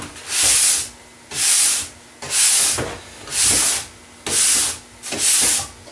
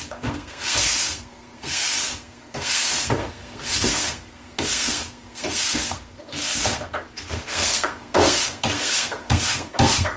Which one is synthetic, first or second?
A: second